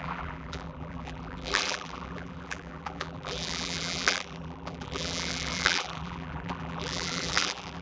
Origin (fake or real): fake